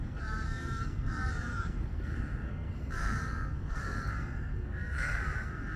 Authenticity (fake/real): fake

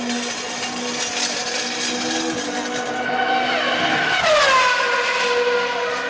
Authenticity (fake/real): real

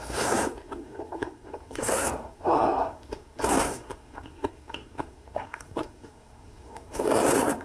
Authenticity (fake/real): fake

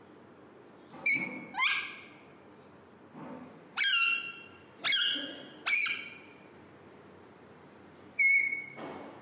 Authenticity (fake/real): real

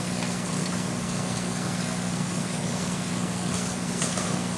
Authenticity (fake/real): fake